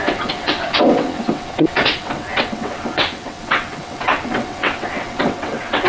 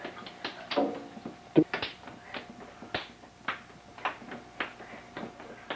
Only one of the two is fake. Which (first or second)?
first